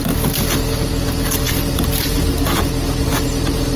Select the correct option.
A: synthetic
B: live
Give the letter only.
B